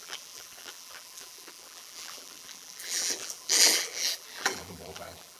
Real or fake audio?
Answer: fake